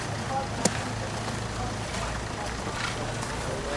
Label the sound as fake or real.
real